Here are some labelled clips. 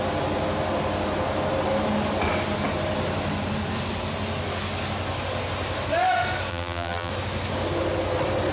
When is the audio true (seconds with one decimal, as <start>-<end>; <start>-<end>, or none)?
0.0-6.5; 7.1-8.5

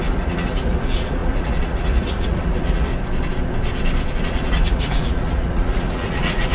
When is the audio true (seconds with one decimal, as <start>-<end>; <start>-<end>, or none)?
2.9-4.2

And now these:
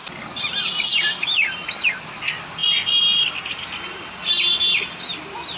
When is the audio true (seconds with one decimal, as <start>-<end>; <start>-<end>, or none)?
0.0-0.9; 1.9-5.6

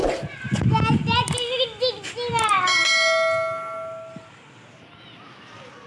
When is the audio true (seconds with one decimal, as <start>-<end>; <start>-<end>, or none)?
0.0-5.9

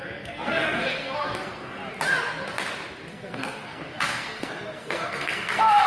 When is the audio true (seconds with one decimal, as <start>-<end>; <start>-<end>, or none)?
1.8-3.1

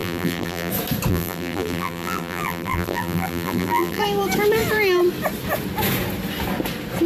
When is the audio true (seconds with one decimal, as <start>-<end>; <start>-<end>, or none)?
0.7-1.1; 4.0-7.1

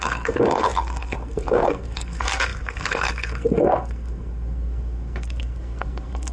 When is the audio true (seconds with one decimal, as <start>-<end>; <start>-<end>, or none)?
none